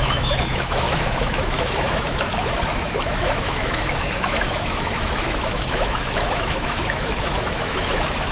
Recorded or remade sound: remade